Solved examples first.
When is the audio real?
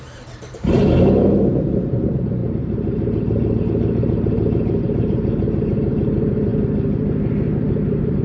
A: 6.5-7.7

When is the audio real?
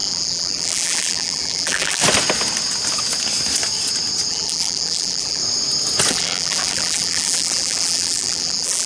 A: 2.0-4.3; 5.4-6.1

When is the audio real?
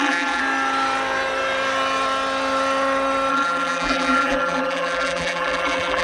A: 0.4-3.3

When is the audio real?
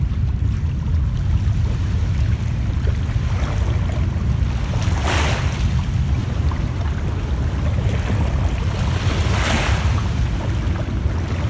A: 0.0-1.8; 2.4-6.2; 6.8-11.5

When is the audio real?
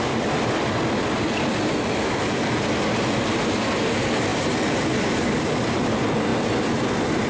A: none